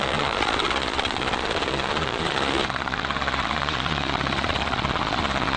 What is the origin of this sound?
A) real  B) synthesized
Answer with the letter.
B